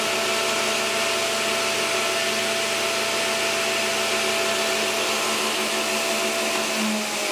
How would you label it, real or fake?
real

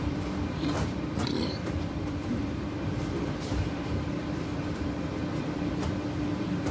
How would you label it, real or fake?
fake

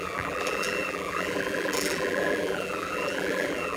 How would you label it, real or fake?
fake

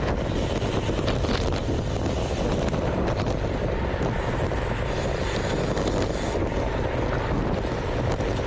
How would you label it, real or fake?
real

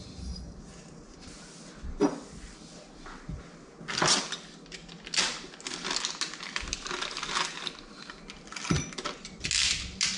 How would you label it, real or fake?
real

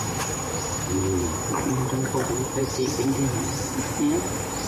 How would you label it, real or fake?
fake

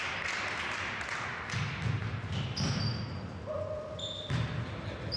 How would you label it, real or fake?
real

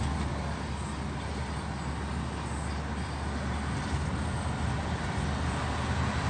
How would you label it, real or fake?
real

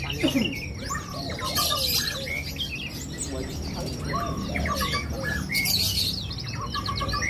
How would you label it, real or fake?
real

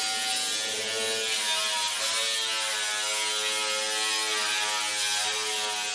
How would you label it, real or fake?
real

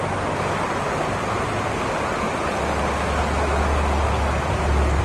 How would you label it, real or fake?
real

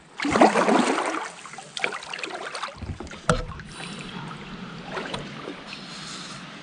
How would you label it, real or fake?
fake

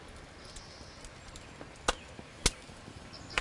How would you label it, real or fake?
real